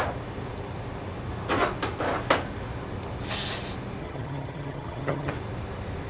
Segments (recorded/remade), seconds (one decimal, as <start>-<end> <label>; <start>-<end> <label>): 0.0-4.0 recorded; 4.0-5.3 remade; 5.3-6.1 recorded

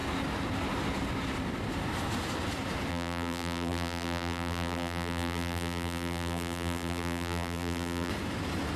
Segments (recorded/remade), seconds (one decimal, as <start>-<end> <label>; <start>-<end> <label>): 0.0-2.9 recorded; 2.9-8.1 remade; 8.1-8.8 recorded

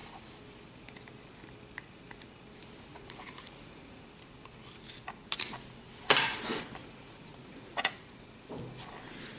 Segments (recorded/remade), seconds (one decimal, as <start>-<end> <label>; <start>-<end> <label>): 0.0-2.9 recorded; 2.9-4.0 remade; 4.0-6.8 recorded; 6.8-8.1 remade; 8.1-9.4 recorded